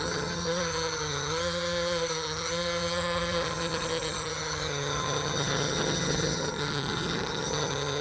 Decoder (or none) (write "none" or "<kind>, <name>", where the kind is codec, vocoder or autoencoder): vocoder, HiFi-GAN